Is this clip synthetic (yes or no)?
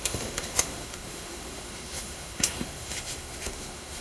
yes